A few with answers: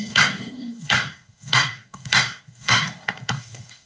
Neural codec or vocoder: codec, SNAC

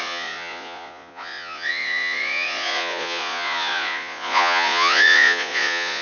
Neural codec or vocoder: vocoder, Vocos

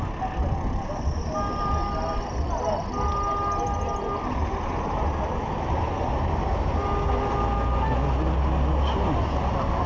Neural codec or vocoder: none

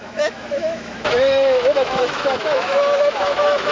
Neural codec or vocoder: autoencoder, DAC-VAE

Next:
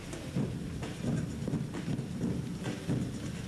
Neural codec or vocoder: none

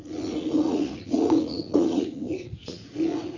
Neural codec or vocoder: vocoder, Vocos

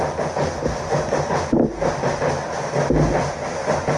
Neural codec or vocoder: none